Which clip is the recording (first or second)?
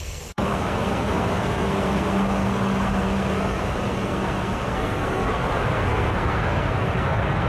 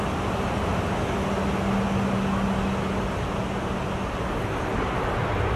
second